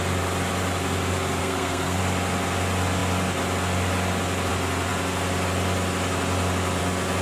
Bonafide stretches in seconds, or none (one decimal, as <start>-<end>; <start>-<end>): 0.0-1.4; 2.0-7.2

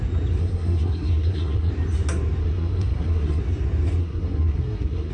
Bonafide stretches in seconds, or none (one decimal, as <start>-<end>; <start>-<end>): 0.0-0.4; 1.7-2.4; 3.4-4.0

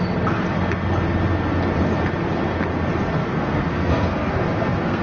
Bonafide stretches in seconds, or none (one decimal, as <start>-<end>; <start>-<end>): 0.0-3.2

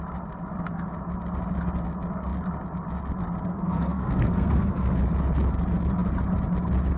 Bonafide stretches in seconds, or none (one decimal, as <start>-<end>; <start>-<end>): 0.0-3.5; 5.0-7.0

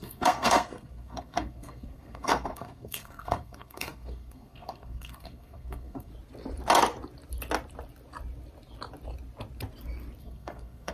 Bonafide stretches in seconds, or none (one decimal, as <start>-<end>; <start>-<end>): 6.1-10.2

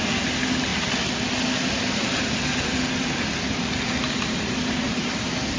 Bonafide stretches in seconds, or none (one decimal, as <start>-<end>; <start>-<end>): 0.0-5.6

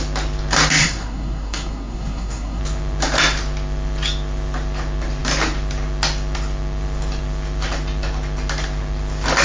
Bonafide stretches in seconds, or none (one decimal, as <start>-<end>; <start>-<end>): 0.0-0.8; 2.6-9.4

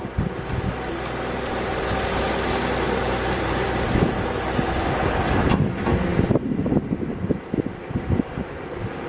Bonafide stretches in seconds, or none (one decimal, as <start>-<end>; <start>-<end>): 0.0-9.1